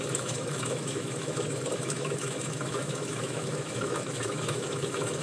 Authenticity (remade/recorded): remade